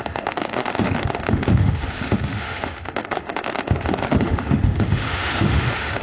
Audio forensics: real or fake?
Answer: fake